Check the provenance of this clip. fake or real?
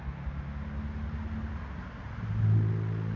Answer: real